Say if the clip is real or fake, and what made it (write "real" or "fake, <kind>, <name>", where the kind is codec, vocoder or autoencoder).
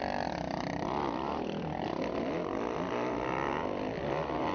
real